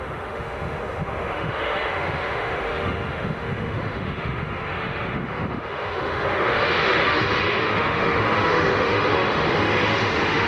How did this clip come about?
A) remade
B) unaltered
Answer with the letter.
A